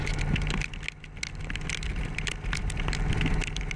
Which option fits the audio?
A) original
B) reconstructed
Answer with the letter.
A